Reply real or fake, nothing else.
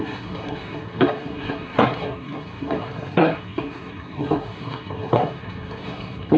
fake